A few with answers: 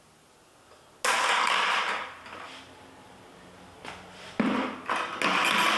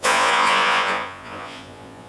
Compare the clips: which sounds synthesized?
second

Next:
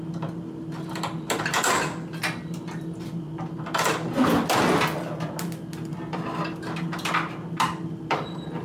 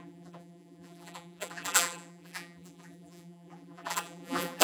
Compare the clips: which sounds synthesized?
second